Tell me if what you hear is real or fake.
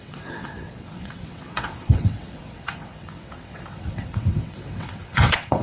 fake